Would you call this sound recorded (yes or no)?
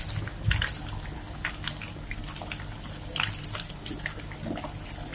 yes